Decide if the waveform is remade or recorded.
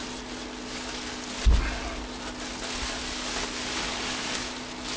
recorded